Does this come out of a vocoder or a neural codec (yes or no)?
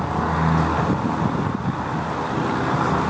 no